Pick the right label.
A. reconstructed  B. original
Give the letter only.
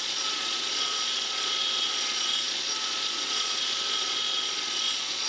A